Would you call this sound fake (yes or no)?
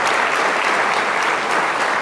no